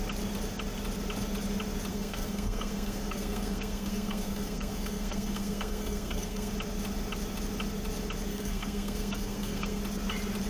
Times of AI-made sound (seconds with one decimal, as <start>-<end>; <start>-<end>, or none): 1.9-6.5; 8.3-9.8